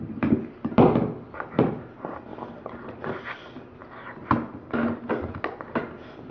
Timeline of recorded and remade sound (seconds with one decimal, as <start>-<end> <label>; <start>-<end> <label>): 0.0-6.3 recorded